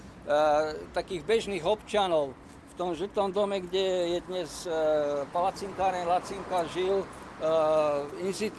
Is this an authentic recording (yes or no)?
yes